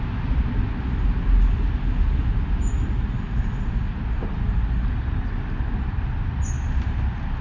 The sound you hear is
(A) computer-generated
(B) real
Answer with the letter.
B